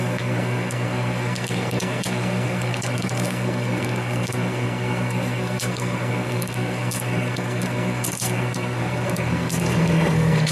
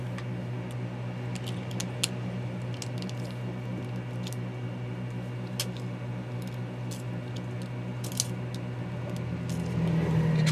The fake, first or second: first